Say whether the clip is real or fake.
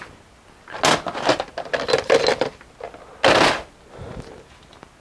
real